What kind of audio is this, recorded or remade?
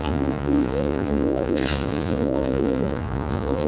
remade